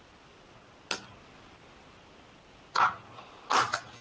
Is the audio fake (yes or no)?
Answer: no